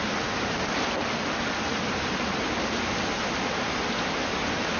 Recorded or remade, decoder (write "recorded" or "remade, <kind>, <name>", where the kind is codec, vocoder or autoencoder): recorded